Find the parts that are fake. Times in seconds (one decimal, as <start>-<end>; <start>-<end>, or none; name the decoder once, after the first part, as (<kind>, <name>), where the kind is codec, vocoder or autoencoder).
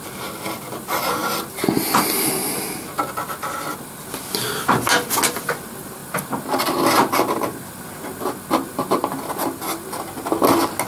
none